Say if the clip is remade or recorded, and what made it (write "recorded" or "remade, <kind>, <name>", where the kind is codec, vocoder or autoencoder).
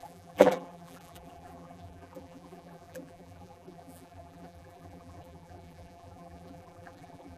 remade, vocoder, BigVGAN v2